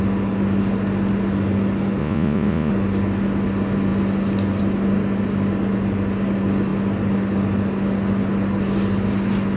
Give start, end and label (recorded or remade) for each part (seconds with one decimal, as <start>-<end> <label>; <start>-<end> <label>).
0.0-2.0 recorded; 2.0-2.7 remade; 2.7-9.6 recorded